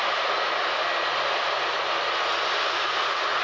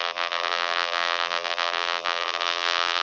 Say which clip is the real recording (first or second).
first